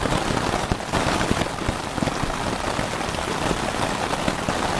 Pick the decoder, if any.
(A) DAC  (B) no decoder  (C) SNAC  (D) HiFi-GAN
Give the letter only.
B